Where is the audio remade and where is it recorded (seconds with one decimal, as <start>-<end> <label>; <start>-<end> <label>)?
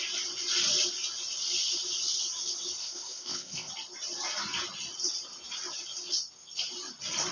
0.0-2.8 recorded; 2.8-3.7 remade; 3.7-7.3 recorded